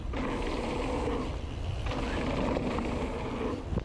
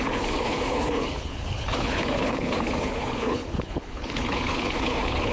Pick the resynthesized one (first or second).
second